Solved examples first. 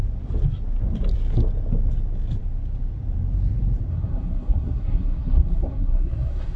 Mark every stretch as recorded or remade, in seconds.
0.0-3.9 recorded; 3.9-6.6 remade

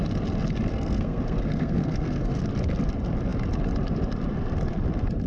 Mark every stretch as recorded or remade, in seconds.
0.0-0.7 recorded; 0.7-2.4 remade; 2.4-5.3 recorded

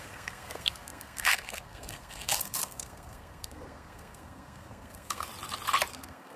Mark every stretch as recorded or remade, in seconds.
0.0-5.3 remade; 5.3-5.9 recorded; 5.9-6.4 remade

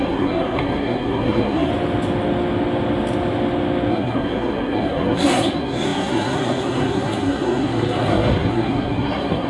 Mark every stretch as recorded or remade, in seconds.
0.0-1.7 remade; 1.7-3.9 recorded; 3.9-9.5 remade

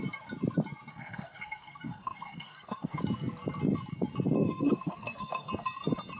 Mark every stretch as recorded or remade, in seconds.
0.0-0.9 recorded; 0.9-3.0 remade; 3.0-4.4 recorded; 4.4-5.5 remade; 5.5-6.2 recorded

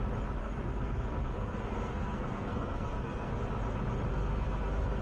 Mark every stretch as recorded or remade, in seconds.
0.0-0.4 recorded; 0.4-3.4 remade; 3.4-4.1 recorded; 4.1-5.0 remade